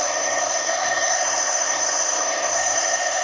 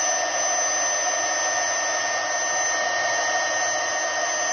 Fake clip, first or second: first